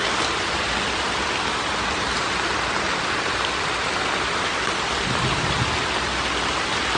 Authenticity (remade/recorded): recorded